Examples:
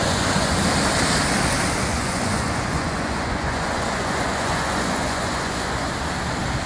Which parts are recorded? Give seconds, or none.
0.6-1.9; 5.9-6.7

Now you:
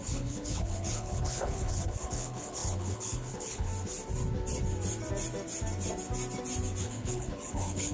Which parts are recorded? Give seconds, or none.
3.7-6.8

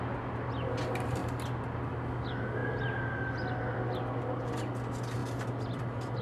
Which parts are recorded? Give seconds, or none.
0.0-5.2; 5.8-6.2